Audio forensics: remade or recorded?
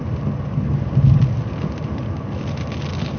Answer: recorded